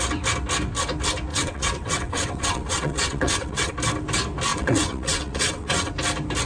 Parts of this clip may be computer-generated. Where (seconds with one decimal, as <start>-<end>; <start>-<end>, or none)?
1.3-3.7; 4.5-5.9